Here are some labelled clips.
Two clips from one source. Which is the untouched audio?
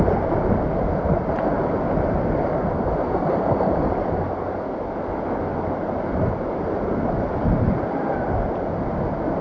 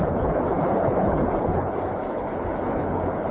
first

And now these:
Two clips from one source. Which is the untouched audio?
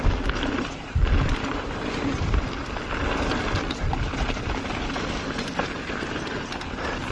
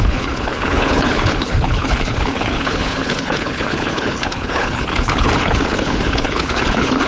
first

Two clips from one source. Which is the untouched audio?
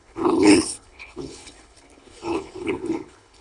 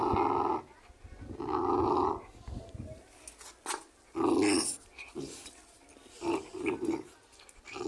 second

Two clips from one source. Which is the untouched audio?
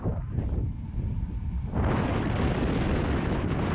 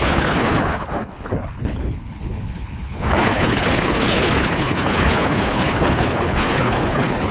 first